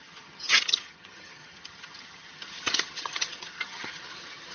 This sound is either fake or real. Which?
fake